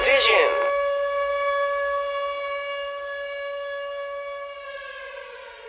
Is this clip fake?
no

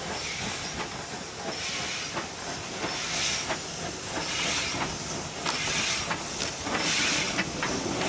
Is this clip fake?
no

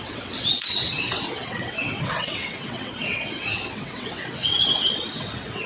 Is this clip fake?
yes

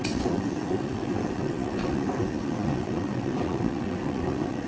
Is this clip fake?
yes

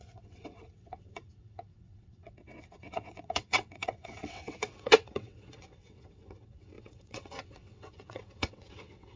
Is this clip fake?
yes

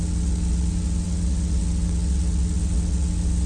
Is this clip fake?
yes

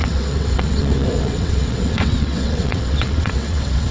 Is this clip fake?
yes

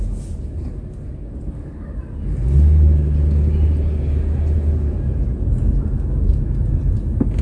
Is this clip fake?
no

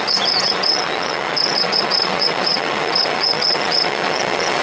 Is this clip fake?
yes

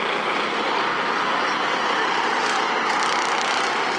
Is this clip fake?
no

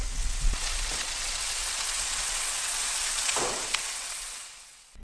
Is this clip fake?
yes